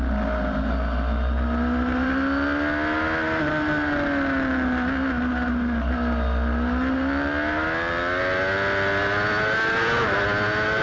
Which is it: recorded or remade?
recorded